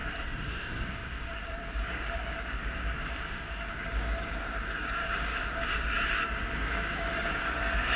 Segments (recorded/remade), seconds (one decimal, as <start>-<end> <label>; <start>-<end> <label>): 0.0-0.5 recorded; 0.5-8.0 remade